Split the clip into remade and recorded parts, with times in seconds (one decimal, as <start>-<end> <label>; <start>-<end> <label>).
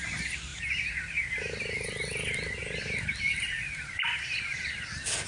0.0-0.5 recorded; 0.5-1.6 remade; 1.6-2.6 recorded; 2.6-4.1 remade; 4.1-5.3 recorded